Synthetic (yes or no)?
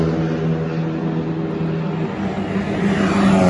no